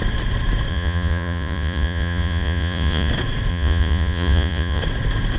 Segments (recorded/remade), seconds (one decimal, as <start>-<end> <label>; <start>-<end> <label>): 0.0-0.7 recorded; 0.7-3.1 remade; 3.1-3.5 recorded; 3.5-4.8 remade; 4.8-5.4 recorded